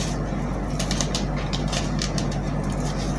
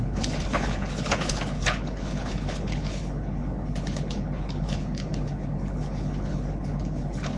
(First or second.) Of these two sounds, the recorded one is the first